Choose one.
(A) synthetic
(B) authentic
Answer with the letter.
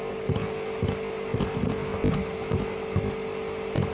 B